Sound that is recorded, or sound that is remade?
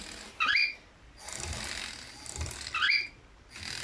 recorded